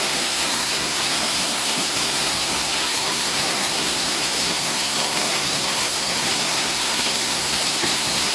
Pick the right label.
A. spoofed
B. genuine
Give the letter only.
A